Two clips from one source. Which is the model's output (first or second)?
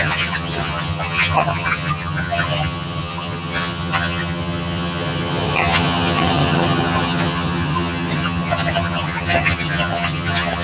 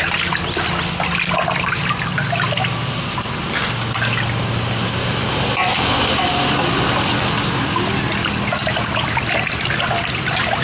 first